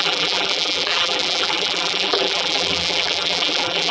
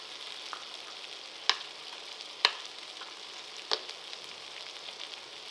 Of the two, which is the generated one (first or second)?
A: first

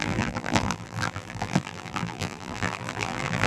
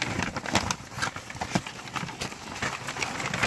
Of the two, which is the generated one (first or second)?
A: first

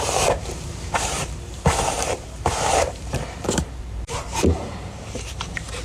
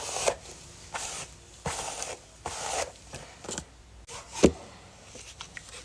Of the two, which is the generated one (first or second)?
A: first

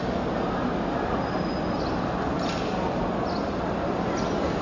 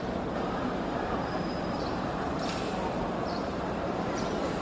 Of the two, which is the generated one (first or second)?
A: second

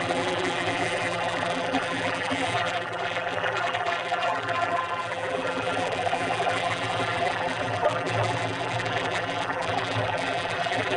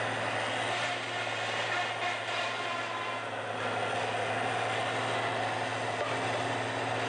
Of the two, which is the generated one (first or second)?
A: first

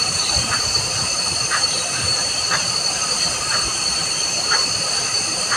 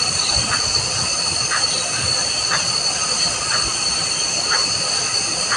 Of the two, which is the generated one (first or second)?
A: first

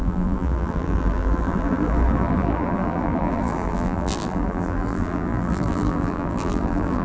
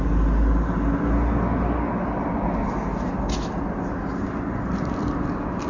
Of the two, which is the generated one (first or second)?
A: first